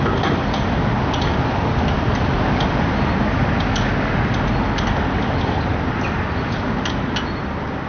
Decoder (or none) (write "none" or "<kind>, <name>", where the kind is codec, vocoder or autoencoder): none